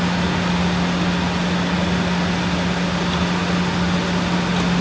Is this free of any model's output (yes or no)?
yes